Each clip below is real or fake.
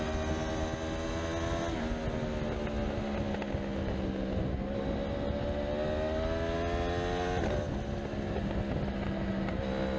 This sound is real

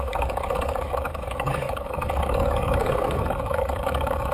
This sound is fake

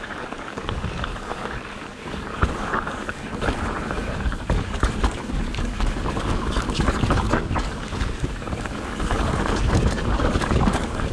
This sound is fake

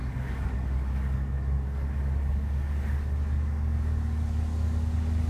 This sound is fake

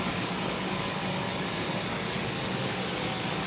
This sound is fake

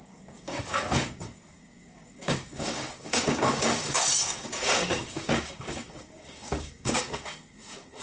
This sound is fake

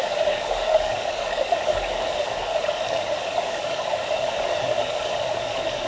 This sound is fake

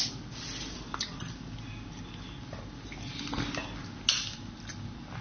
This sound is real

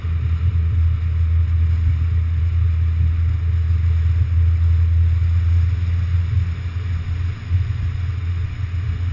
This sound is real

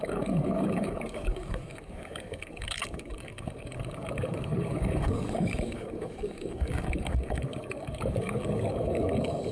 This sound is fake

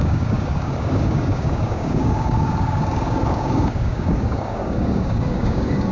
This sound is fake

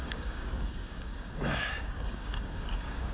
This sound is fake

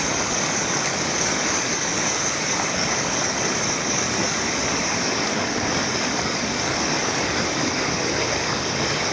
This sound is fake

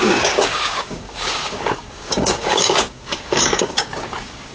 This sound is fake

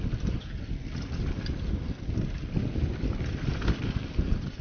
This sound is real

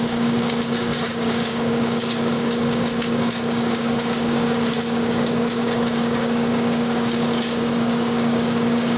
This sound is fake